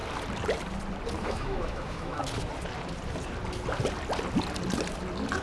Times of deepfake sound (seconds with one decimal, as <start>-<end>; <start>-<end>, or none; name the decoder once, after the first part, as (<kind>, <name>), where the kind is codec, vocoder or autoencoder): 1.2-2.2 (autoencoder, DAC-VAE)